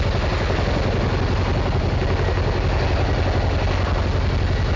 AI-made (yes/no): no